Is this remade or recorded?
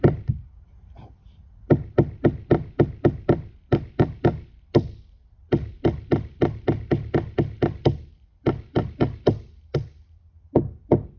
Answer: recorded